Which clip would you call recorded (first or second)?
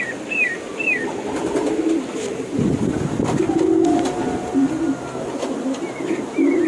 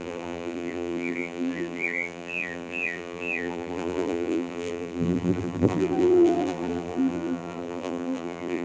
first